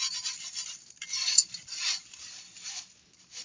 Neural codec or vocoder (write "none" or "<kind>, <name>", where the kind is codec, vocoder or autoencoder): none